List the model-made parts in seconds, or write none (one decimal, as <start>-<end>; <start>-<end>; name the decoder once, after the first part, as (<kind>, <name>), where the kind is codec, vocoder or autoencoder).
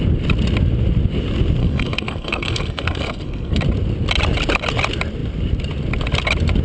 1.6-3.6 (codec, SNAC)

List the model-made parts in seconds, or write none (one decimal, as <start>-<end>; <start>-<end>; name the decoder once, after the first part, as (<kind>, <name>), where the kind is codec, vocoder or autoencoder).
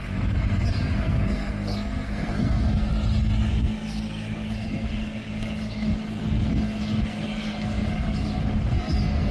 0.0-2.9 (codec, SNAC); 3.5-9.3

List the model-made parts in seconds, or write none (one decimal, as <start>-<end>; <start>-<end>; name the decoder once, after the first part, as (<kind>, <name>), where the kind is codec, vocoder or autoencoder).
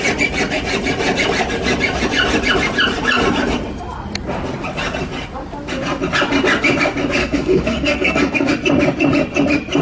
7.2-8.5 (codec, SNAC)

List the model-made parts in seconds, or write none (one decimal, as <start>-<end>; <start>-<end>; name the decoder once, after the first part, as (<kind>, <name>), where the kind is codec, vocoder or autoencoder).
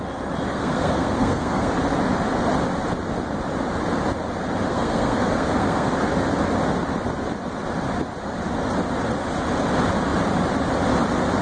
0.5-1.7 (codec, SNAC); 4.7-5.9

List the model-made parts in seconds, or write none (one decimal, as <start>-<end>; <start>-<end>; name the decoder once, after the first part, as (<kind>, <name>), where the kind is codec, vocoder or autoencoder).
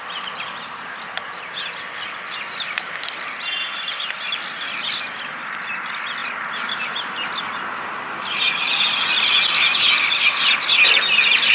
none